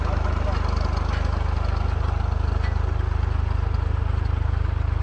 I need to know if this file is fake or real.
real